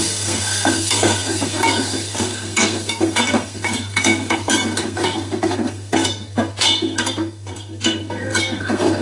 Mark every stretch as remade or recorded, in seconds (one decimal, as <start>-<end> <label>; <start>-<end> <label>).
0.0-9.0 remade